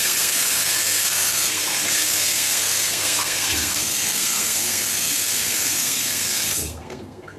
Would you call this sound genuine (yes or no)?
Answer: no